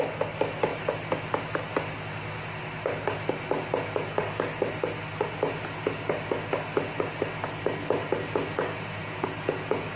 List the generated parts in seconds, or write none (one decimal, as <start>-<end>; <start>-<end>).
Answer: 9.0-10.0